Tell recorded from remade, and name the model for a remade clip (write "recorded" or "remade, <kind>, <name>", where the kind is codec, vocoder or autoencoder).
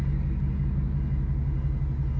recorded